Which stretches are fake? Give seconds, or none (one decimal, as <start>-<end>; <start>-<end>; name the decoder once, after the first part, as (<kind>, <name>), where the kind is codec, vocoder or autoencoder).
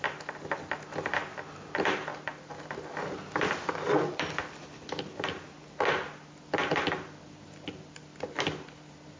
none